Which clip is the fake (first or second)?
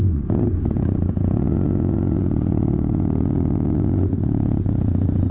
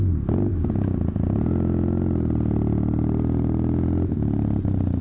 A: first